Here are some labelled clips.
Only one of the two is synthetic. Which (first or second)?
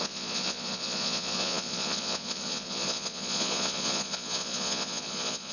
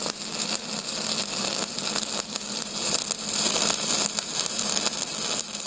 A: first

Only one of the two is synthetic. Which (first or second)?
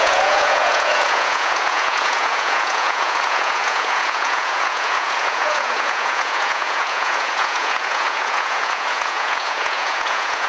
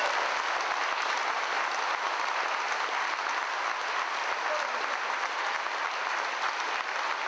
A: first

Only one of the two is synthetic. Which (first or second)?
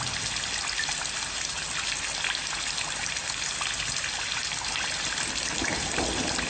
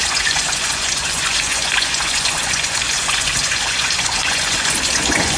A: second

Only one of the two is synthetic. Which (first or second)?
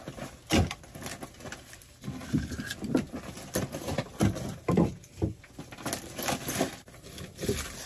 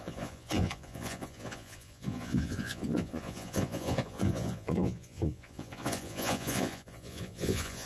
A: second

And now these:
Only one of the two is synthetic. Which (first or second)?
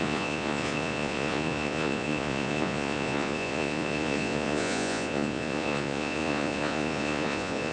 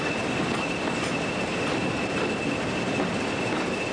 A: first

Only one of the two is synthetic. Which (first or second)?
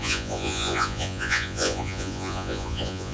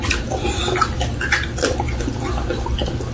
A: first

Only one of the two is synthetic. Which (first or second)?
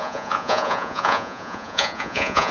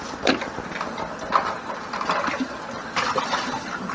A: first